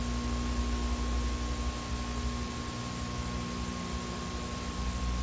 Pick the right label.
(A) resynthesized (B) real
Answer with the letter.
B